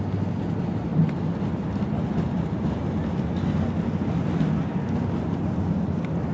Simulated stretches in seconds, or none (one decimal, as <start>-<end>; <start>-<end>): none